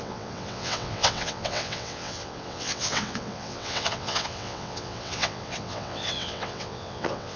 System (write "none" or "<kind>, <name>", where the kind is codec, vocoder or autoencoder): vocoder, WaveNeXt